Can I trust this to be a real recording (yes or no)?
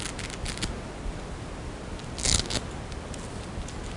yes